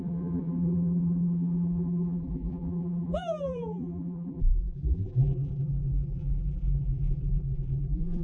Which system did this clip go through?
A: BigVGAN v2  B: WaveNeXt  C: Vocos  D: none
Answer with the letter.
A